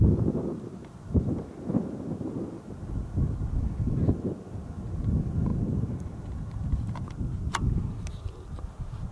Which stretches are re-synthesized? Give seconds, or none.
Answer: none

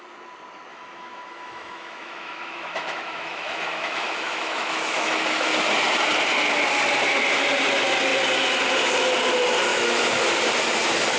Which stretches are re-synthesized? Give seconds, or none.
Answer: 0.7-5.5 (autoencoder, DAC-VAE); 9.7-10.2

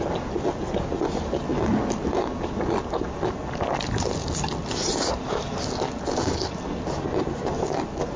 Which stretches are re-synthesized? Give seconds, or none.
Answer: none